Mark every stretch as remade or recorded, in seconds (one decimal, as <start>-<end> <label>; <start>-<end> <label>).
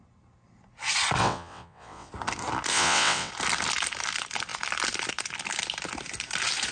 0.0-1.2 recorded; 1.2-2.1 remade; 2.1-2.7 recorded; 2.7-3.3 remade; 3.3-6.7 recorded